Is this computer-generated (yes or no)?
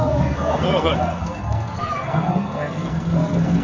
yes